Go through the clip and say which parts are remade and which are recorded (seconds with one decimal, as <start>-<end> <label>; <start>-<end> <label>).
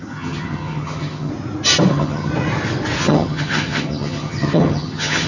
0.0-1.3 remade; 1.3-1.9 recorded; 1.9-2.3 remade; 2.3-3.0 recorded; 3.0-5.3 remade